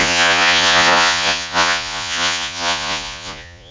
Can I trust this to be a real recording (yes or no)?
no